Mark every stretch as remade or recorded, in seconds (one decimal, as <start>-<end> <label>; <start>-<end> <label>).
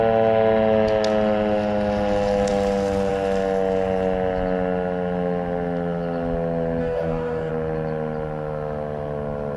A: 0.0-6.8 recorded; 6.8-7.5 remade; 7.5-9.6 recorded